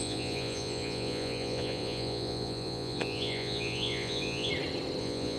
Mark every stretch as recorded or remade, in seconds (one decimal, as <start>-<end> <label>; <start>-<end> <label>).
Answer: 0.0-4.5 remade; 4.5-5.0 recorded; 5.0-5.4 remade